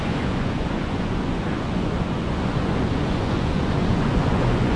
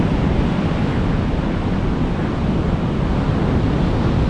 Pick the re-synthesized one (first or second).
first